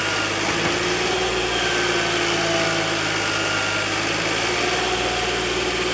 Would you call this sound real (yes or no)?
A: yes